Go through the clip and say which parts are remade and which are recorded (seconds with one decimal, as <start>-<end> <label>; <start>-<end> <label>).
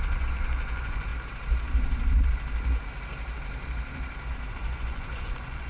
0.0-1.1 remade; 1.1-4.5 recorded; 4.5-5.7 remade